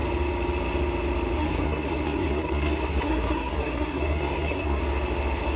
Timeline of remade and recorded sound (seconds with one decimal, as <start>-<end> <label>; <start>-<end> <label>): 0.0-1.4 recorded; 1.4-4.8 remade; 4.8-5.6 recorded